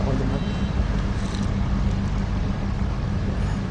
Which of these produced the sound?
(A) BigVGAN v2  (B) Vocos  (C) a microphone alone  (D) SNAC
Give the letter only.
C